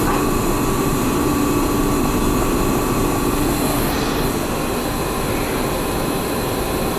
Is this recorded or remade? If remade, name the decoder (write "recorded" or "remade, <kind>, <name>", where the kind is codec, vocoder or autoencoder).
recorded